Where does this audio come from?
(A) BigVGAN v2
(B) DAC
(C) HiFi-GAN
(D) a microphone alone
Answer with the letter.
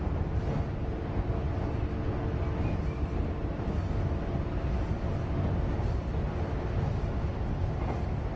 D